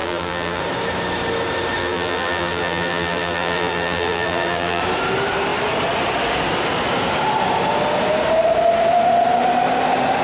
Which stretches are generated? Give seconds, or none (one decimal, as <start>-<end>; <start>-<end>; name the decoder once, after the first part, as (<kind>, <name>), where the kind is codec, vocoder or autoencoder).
0.0-0.6 (vocoder, BigVGAN v2); 1.8-4.8